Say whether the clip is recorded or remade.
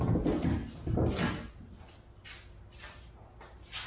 recorded